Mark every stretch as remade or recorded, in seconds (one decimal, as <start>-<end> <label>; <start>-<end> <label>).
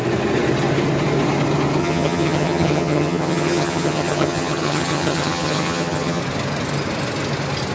0.0-1.8 recorded; 1.8-6.2 remade; 6.2-7.7 recorded